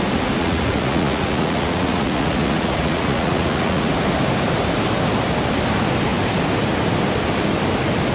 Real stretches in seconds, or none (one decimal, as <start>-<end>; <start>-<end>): 0.0-0.4; 3.9-8.1